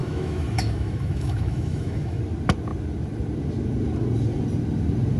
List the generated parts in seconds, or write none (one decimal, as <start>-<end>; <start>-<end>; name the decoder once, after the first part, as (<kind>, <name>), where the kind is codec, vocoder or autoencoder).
0.0-2.2 (autoencoder, DAC-VAE)

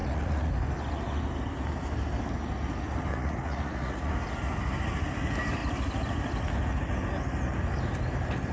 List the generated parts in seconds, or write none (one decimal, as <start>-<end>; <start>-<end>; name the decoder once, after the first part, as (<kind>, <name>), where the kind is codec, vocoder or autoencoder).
0.0-0.5 (vocoder, Vocos); 3.1-4.1

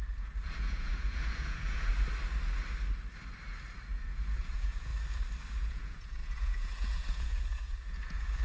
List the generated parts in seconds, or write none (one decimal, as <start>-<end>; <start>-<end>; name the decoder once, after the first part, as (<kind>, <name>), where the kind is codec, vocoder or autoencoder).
0.0-1.9 (vocoder, Vocos); 4.0-4.9; 5.6-8.4

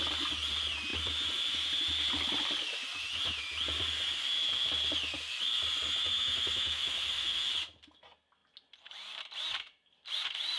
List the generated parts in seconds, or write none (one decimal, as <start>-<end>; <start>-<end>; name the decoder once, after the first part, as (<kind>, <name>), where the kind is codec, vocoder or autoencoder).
6.1-7.5 (autoencoder, DAC-VAE)

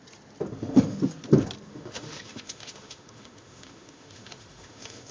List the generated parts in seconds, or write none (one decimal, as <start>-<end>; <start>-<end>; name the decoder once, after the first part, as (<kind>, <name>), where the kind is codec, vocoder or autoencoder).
0.5-1.0 (autoencoder, DAC-VAE); 1.7-5.1